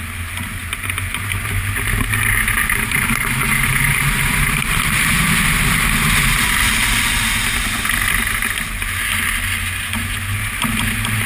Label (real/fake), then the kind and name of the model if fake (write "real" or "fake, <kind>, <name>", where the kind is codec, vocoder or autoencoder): real